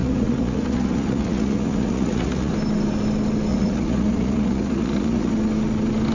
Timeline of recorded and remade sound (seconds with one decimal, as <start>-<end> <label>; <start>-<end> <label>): 0.0-2.5 remade; 2.5-3.5 recorded; 3.5-5.3 remade; 5.3-6.1 recorded